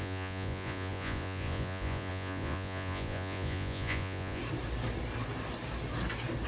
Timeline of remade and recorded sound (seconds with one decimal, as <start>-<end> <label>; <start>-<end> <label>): 0.0-4.4 remade; 4.4-6.5 recorded